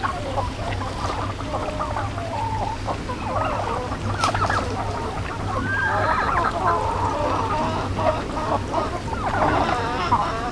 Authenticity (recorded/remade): recorded